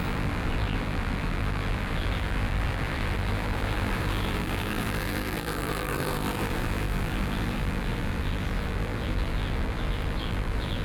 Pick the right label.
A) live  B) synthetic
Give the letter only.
B